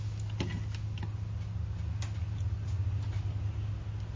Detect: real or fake real